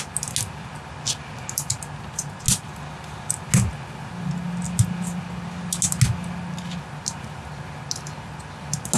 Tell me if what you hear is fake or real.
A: real